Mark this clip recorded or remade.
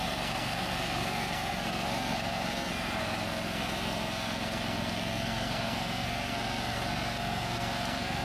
remade